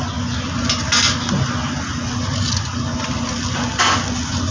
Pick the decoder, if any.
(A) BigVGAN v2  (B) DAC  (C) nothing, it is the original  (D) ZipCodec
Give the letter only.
C